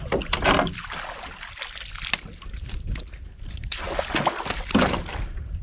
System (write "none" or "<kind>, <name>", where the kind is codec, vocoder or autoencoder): none